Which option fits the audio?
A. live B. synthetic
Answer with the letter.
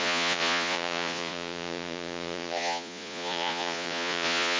B